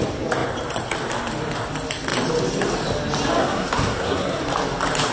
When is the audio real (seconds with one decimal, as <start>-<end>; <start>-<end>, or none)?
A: 0.0-3.4; 4.4-5.1